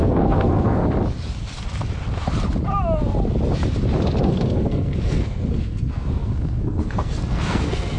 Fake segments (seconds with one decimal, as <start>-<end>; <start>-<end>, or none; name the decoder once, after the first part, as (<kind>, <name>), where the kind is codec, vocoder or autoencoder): 0.0-0.8 (codec, SNAC); 4.2-8.0